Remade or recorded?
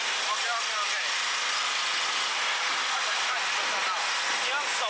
recorded